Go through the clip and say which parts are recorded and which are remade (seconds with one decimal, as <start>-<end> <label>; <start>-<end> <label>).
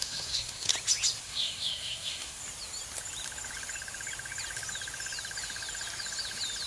0.0-0.7 remade; 0.7-1.2 recorded; 1.2-2.4 remade; 2.4-6.7 recorded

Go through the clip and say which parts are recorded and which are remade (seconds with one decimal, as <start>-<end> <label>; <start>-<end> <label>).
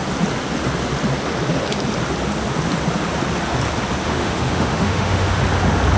0.0-4.0 recorded; 4.0-5.4 remade; 5.4-6.0 recorded